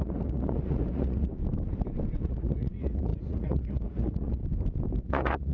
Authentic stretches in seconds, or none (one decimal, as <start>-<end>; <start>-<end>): 1.3-2.2; 4.4-5.0